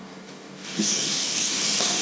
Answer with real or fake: fake